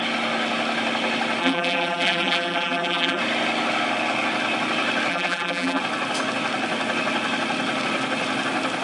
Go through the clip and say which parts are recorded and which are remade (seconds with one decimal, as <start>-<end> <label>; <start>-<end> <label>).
0.0-1.4 recorded; 1.4-3.2 remade; 3.2-5.1 recorded; 5.1-5.8 remade; 5.8-8.8 recorded